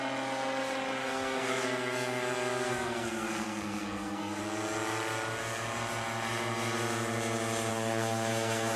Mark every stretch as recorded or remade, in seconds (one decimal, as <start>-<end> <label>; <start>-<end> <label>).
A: 0.0-1.0 recorded; 1.0-4.4 remade; 4.4-7.7 recorded; 7.7-8.8 remade